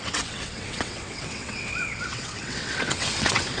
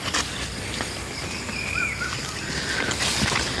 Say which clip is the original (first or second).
second